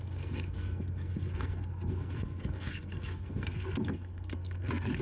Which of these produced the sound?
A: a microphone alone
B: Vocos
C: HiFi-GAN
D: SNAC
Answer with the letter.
D